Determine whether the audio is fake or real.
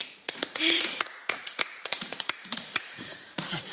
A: fake